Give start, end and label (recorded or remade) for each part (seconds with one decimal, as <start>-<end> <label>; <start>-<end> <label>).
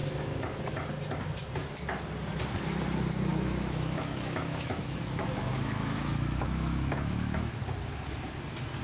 0.0-3.3 recorded; 3.3-7.6 remade; 7.6-8.8 recorded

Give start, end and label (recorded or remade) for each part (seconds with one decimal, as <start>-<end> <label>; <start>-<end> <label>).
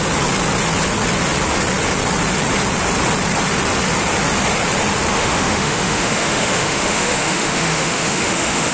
0.0-5.1 recorded; 5.1-8.7 remade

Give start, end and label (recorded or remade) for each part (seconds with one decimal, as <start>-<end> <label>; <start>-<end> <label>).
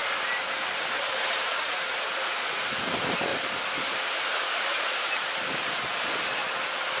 0.0-7.0 recorded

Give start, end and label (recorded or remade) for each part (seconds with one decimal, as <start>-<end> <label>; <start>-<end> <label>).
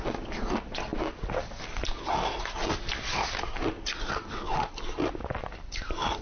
0.0-6.2 recorded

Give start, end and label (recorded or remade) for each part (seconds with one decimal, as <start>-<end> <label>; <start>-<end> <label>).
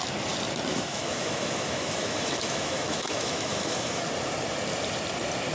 0.0-0.7 recorded; 0.7-4.0 remade; 4.0-5.5 recorded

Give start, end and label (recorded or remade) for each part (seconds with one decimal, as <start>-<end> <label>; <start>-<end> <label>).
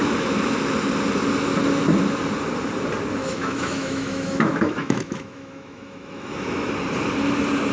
0.0-3.2 recorded; 3.2-6.7 remade; 6.7-7.7 recorded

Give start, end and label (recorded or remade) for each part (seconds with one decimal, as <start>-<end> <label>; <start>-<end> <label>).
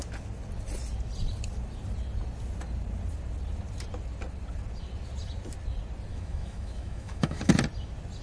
0.0-6.1 recorded; 6.1-7.5 remade; 7.5-8.2 recorded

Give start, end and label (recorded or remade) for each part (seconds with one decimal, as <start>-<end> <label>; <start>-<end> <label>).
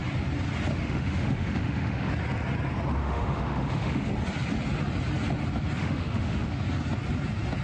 0.0-0.7 recorded; 0.7-2.1 remade; 2.1-3.0 recorded; 3.0-4.1 remade; 4.1-5.8 recorded; 5.8-6.6 remade; 6.6-7.6 recorded